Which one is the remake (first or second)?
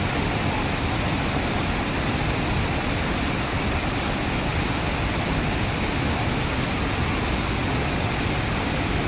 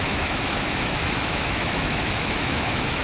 second